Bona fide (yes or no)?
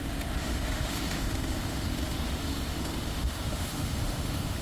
no